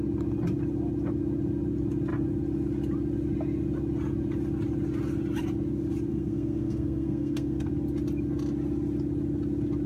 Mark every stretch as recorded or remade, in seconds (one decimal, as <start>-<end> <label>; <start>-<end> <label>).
0.0-6.1 recorded; 6.1-7.7 remade; 7.7-9.9 recorded